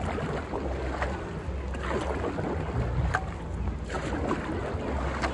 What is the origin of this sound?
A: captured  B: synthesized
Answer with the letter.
A